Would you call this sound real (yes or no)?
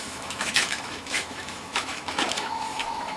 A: no